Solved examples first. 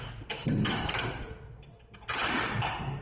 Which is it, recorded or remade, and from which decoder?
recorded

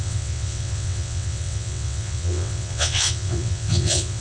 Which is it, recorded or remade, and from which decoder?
remade, vocoder, WaveNeXt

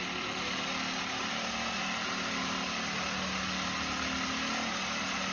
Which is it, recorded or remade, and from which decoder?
recorded